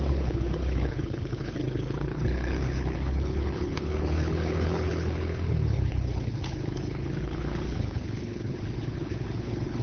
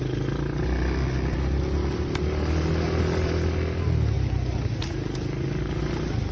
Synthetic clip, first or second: first